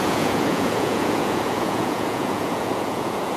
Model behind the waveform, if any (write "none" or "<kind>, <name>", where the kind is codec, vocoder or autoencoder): vocoder, Vocos